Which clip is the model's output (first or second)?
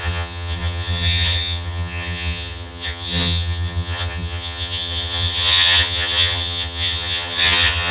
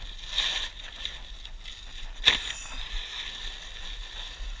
first